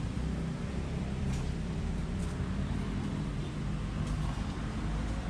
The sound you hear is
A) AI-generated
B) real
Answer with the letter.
A